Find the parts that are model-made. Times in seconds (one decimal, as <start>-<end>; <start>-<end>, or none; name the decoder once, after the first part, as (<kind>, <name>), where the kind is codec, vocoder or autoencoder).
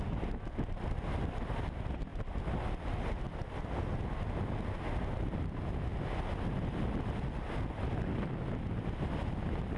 none